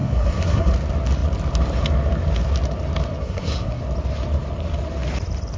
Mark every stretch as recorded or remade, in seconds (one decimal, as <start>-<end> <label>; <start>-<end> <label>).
0.0-0.7 remade; 0.7-3.2 recorded; 3.2-3.8 remade; 3.8-5.6 recorded